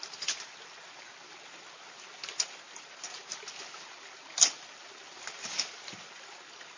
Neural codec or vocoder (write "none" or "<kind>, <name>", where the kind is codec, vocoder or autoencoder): none